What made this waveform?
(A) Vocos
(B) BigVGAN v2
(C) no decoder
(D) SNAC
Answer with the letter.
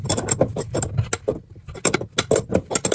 C